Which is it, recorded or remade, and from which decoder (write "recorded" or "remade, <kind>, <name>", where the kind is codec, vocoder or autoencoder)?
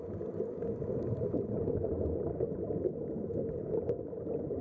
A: recorded